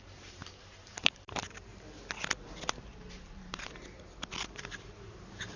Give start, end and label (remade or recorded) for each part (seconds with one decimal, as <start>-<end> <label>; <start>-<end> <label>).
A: 0.0-0.4 remade; 0.4-0.9 recorded; 0.9-1.7 remade; 1.7-3.1 recorded; 3.1-5.6 remade